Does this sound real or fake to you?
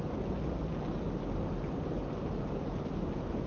real